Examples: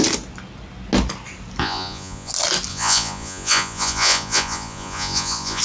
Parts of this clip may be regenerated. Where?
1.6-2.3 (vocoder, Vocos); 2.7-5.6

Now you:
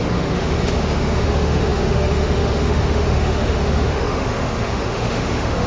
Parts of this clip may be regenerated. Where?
0.0-5.7 (autoencoder, DAC-VAE)

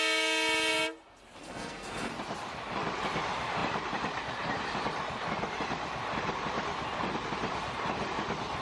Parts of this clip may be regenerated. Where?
1.4-2.1 (codec, SNAC)

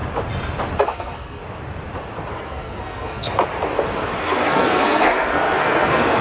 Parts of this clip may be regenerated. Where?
0.8-1.4 (codec, SNAC); 2.3-3.3; 4.2-6.2

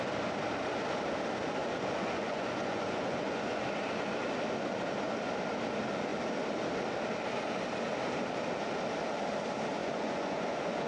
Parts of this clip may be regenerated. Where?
1.6-3.6 (vocoder, Vocos); 9.8-10.9

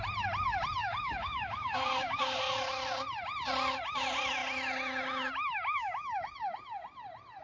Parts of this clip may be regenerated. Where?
0.8-2.4 (codec, DAC)